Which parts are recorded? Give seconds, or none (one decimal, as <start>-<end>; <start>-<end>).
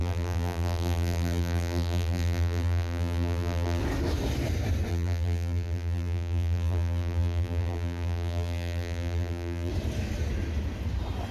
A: 3.8-4.9; 9.7-11.3